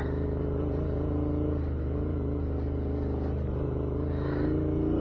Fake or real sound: real